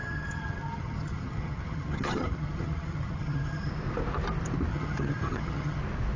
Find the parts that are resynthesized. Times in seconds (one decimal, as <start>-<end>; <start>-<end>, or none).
0.0-3.7; 4.7-5.8